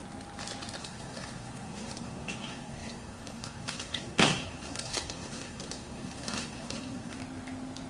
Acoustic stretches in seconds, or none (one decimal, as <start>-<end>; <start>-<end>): 0.0-0.8; 7.2-7.9